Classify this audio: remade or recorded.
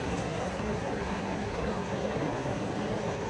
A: remade